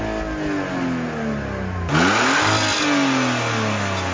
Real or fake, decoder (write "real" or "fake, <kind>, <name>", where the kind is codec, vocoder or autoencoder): real